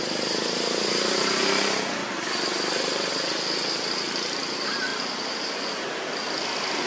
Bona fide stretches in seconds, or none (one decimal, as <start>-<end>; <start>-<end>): 0.0-6.9